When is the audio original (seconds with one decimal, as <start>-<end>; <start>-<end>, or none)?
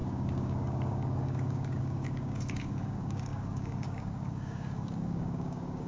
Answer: none